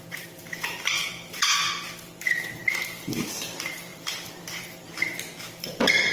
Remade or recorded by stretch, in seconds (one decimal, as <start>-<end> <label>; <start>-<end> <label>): 0.0-1.4 remade; 1.4-3.2 recorded; 3.2-6.1 remade